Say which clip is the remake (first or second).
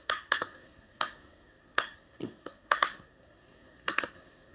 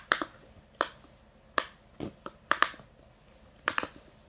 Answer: first